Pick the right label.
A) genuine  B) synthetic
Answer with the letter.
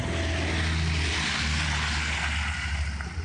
A